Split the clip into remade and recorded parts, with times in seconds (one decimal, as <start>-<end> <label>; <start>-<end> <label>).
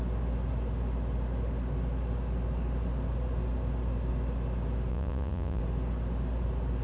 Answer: 0.0-4.9 recorded; 4.9-5.6 remade; 5.6-6.8 recorded